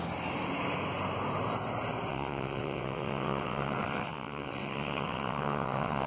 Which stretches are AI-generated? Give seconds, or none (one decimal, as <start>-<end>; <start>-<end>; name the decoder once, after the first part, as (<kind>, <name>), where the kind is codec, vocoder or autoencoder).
2.1-6.1 (vocoder, WaveNeXt)